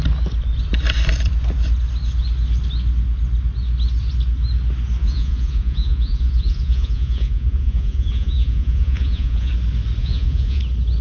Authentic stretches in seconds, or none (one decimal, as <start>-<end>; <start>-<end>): 0.0-5.0; 9.5-10.0; 10.6-11.0

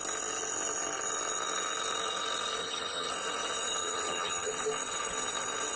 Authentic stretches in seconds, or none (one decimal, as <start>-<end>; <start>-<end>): 0.0-2.6; 3.1-3.8; 4.5-5.8

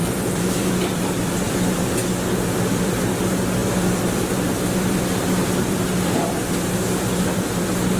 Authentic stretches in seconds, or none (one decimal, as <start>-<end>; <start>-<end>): 2.0-2.5

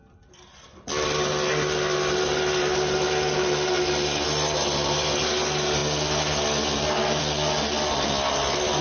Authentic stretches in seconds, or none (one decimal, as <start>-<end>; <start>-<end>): 0.0-8.8

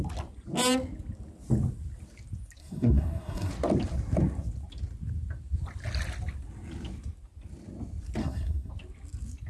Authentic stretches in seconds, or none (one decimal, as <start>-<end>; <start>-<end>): 0.0-2.6; 3.5-8.2; 8.7-9.5

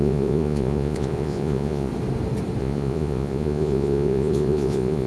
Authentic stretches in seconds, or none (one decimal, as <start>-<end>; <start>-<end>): 1.9-2.6

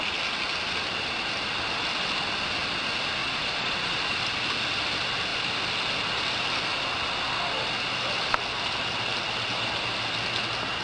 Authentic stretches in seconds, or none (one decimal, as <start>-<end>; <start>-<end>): 0.0-3.2; 4.2-10.8

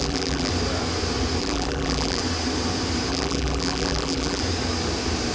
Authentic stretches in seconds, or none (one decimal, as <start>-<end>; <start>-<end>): 0.5-1.4; 2.2-3.1; 4.4-5.3